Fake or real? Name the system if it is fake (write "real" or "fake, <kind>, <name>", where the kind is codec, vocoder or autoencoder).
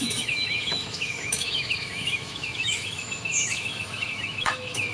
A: fake, autoencoder, DAC-VAE